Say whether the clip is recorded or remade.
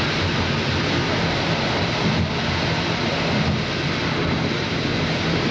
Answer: recorded